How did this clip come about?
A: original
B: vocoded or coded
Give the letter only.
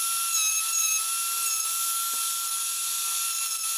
A